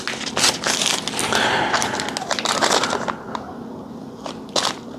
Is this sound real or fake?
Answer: real